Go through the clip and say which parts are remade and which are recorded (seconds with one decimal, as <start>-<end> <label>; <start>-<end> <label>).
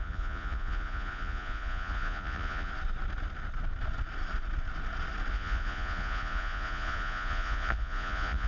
0.0-2.7 remade; 2.7-5.3 recorded; 5.3-8.5 remade